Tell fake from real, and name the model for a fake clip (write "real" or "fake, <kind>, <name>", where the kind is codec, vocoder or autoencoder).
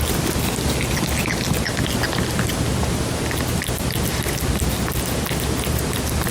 real